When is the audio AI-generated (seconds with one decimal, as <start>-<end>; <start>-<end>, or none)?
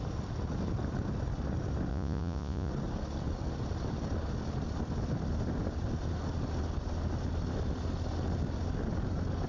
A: 1.9-2.7